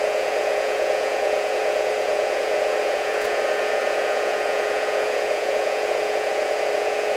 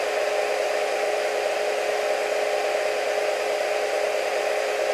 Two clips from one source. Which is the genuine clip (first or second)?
second